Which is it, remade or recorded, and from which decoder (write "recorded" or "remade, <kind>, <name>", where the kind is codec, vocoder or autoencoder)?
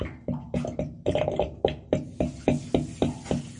recorded